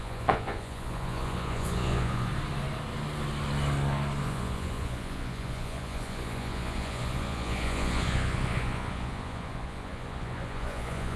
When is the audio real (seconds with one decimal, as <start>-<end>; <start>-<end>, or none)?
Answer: 2.3-4.2